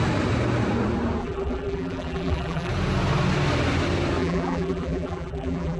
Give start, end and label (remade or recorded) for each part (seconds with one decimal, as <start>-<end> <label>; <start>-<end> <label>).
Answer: 0.0-1.2 recorded; 1.2-2.7 remade; 2.7-4.2 recorded; 4.2-5.8 remade